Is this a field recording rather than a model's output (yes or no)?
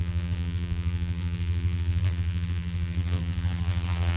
no